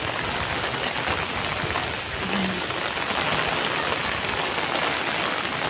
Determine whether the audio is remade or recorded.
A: recorded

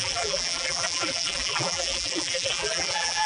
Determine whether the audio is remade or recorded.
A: remade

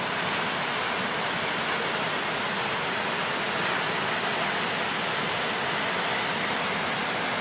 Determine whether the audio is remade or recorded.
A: recorded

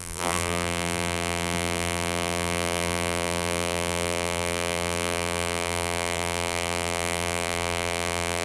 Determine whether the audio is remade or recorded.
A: remade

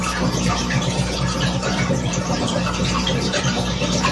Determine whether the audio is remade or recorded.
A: remade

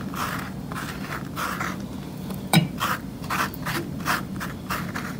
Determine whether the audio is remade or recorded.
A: remade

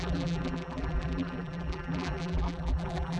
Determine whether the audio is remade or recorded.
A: remade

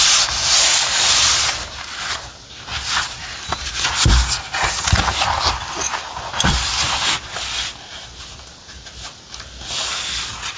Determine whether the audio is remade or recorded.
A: recorded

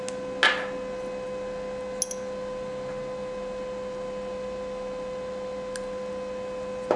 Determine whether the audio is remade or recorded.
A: recorded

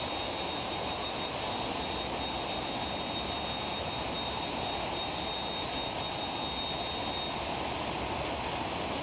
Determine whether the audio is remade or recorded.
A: recorded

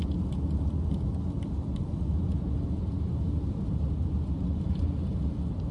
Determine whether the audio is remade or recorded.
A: recorded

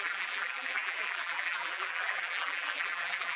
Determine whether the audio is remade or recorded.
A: remade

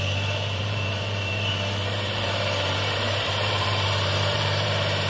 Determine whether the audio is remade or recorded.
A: remade